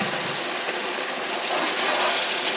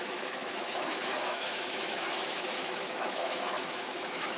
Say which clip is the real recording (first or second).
first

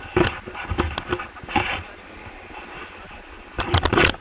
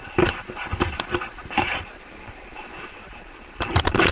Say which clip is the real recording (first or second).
first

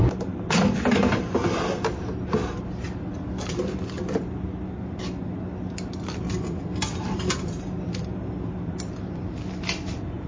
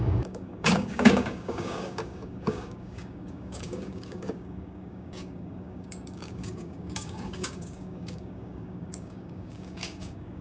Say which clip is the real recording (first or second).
first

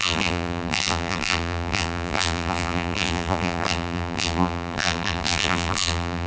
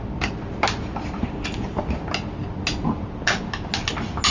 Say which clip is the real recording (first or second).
second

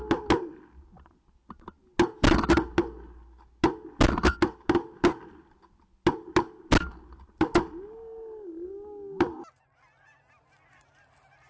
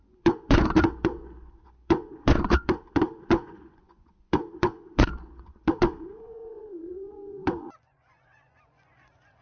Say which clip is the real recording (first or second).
first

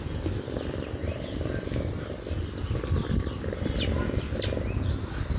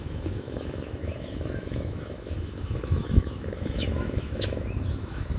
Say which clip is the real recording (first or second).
first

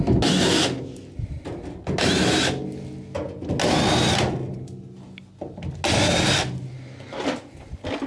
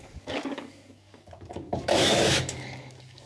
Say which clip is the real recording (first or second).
first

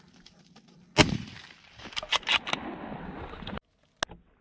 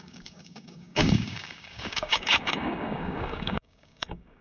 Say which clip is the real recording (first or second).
first